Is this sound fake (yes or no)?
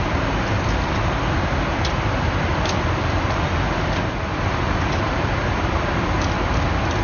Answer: no